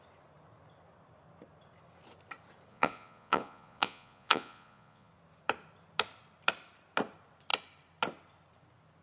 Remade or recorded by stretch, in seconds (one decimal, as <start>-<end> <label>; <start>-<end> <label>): 0.0-2.7 recorded; 2.7-5.1 remade; 5.1-9.0 recorded